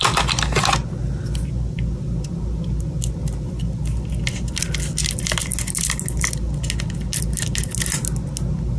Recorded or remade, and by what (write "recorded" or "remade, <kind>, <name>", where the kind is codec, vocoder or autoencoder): recorded